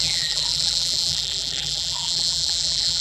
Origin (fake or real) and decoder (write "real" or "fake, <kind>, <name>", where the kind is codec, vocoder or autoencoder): fake, vocoder, BigVGAN v2